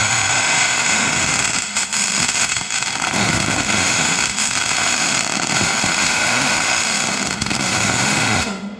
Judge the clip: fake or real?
fake